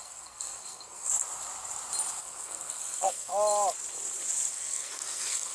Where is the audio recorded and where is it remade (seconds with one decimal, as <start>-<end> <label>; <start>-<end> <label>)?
0.0-1.1 remade; 1.1-2.2 recorded; 2.2-3.3 remade; 3.3-4.5 recorded; 4.5-5.5 remade